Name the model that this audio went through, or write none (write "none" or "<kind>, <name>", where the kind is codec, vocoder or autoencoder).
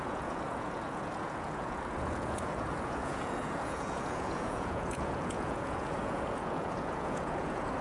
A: vocoder, Vocos